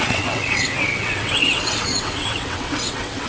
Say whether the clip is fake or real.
fake